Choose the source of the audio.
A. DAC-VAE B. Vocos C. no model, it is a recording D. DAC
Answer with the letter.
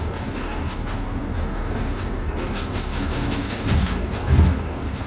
D